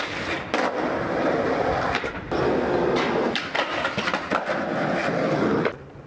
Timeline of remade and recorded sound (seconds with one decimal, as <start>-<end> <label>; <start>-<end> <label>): 0.0-6.1 recorded